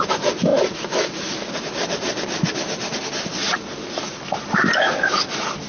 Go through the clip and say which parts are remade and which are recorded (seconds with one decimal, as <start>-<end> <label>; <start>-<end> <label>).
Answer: 0.0-5.7 recorded